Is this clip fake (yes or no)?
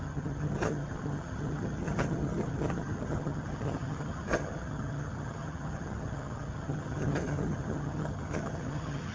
yes